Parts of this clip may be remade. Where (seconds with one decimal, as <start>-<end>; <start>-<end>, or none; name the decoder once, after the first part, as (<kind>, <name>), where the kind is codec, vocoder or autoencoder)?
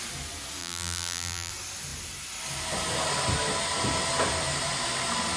0.6-1.5 (vocoder, BigVGAN v2)